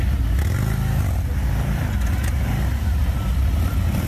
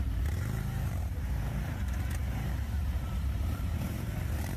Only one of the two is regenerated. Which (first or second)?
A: second